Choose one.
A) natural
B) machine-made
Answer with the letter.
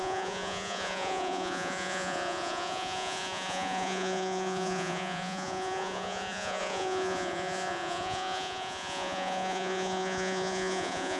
B